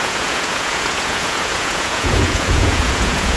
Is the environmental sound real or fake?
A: fake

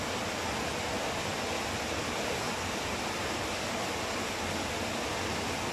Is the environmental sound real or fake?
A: real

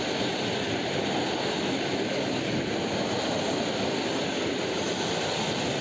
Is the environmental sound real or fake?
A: real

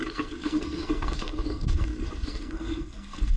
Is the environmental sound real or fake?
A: fake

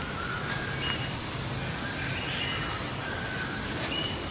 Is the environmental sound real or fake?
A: real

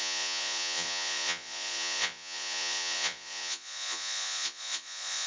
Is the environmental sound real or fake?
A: fake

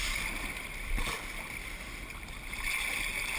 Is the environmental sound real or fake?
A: real